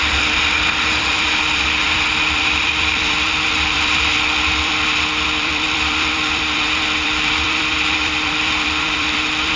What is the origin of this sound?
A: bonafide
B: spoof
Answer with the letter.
B